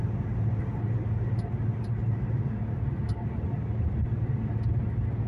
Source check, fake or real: real